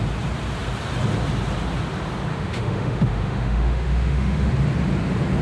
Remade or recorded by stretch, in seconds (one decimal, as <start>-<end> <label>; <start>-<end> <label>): 0.0-2.3 recorded; 2.3-4.5 remade; 4.5-5.4 recorded